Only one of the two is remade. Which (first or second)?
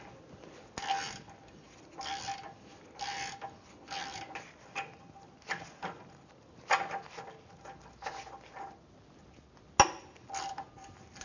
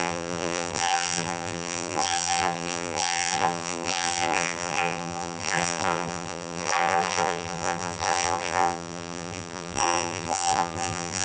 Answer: second